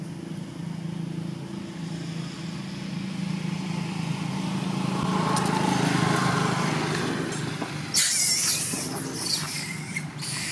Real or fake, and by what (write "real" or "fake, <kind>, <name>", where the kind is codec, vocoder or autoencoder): real